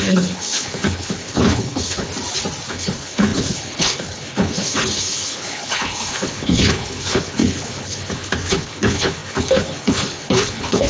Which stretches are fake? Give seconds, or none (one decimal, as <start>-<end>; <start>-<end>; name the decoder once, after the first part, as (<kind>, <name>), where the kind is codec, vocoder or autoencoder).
0.0-2.1 (codec, HILCodec); 2.7-10.9